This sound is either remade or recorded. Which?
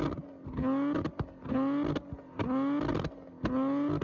recorded